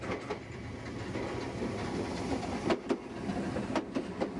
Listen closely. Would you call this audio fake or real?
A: real